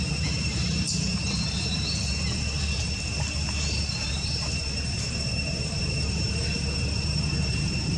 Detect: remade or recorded remade